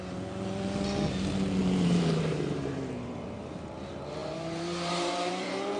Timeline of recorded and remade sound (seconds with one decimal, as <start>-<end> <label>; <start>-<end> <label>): 0.0-1.6 recorded; 1.6-5.8 remade